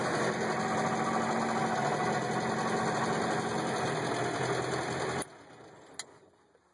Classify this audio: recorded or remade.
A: recorded